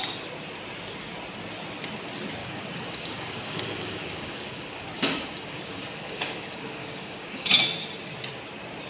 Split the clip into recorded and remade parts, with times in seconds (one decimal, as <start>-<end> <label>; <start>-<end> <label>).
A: 0.0-2.4 recorded; 2.4-7.5 remade; 7.5-8.9 recorded